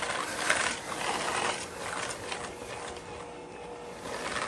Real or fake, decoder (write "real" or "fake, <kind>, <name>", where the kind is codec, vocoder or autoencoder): real